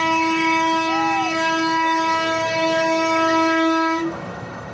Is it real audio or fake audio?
fake